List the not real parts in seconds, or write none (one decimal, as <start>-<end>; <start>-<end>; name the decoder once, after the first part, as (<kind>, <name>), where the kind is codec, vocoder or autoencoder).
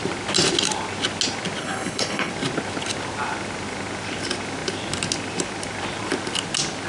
1.6-2.3 (codec, HILCodec)